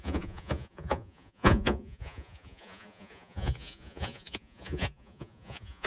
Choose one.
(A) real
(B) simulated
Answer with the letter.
B